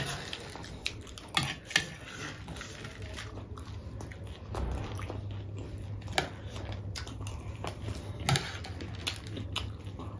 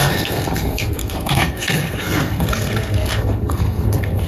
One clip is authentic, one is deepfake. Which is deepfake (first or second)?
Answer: second